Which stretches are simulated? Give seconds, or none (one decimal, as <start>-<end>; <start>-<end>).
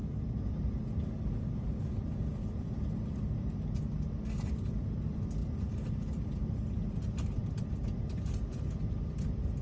none